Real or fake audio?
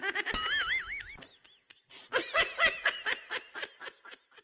real